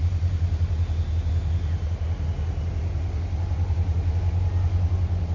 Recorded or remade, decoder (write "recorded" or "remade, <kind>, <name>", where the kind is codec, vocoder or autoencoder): recorded